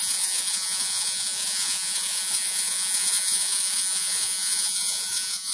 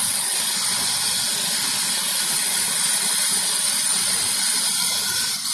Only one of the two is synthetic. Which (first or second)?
first